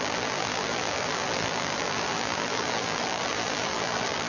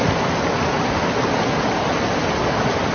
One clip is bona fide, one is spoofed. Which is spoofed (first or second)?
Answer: first